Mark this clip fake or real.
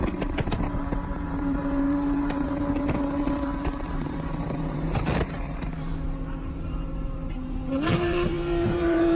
fake